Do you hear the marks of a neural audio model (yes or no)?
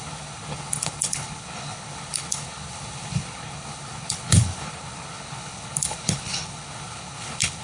yes